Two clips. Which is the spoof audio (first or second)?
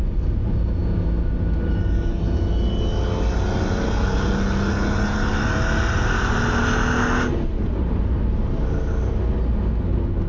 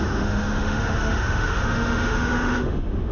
second